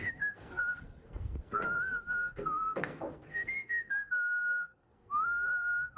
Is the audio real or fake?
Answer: fake